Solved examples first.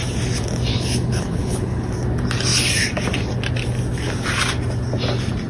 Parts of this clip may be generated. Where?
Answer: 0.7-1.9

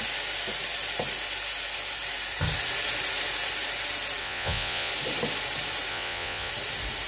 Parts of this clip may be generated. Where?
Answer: 4.2-4.9; 5.9-6.5

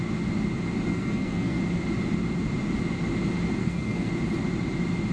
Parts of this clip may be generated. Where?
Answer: 0.9-1.6; 3.6-4.1

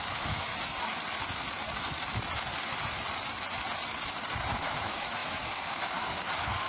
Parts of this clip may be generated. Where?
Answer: 0.0-0.5; 4.5-6.7

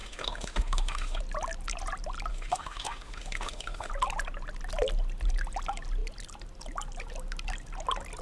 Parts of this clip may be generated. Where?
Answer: 0.0-1.2; 2.3-3.9

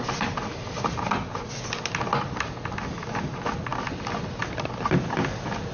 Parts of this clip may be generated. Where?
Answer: none

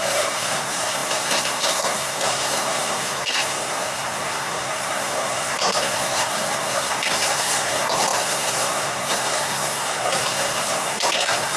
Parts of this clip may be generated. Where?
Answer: 0.0-11.6